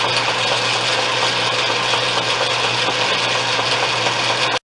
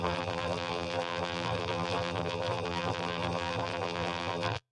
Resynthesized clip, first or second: second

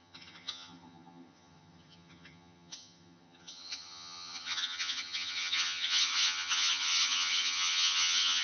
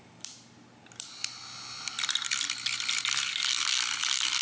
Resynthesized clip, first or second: first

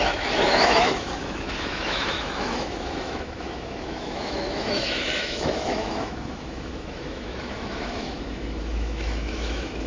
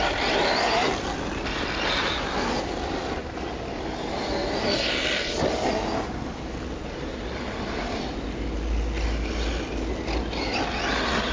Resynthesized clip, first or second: first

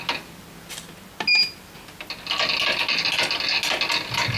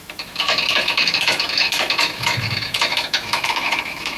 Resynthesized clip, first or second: second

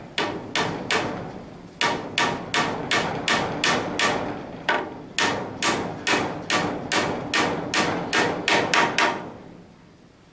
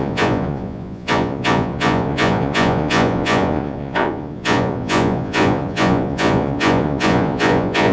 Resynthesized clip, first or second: second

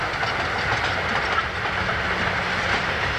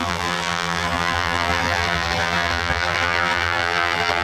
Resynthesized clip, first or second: second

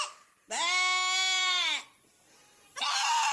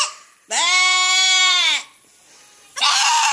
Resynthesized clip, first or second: second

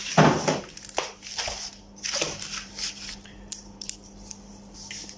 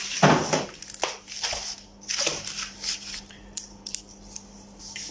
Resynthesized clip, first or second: first